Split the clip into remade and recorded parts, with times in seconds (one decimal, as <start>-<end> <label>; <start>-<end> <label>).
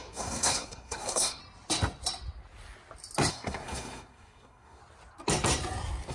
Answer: 0.0-1.4 remade; 1.4-3.3 recorded; 3.3-4.8 remade; 4.8-6.1 recorded